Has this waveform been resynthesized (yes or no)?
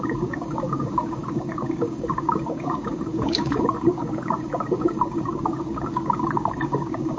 yes